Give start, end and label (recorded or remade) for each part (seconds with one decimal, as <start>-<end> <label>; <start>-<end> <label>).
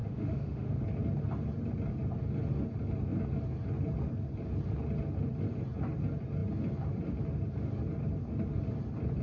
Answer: 0.0-0.8 remade; 0.8-9.2 recorded